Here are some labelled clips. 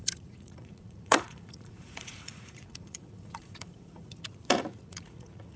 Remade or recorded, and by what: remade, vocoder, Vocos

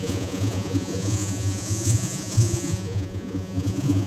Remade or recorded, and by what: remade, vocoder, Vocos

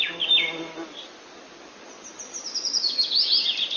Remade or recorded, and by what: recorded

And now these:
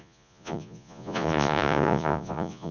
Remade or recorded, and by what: remade, vocoder, Vocos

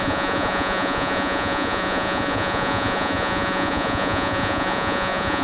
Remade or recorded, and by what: remade, vocoder, Vocos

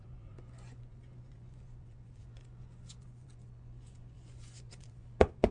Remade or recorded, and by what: remade, vocoder, Vocos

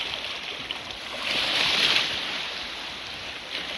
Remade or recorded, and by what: recorded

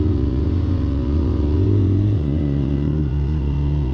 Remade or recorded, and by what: remade, vocoder, Vocos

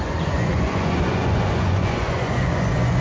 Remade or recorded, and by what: remade, vocoder, Vocos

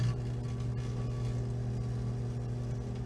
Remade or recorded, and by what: recorded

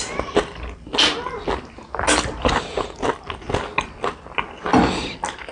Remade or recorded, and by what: recorded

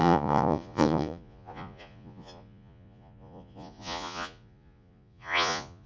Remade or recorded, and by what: remade, vocoder, Vocos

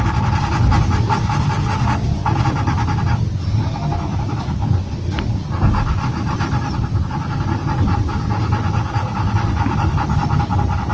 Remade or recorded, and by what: recorded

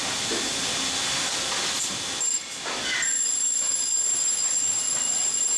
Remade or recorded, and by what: recorded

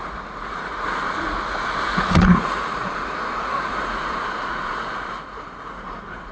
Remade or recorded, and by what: remade, vocoder, Vocos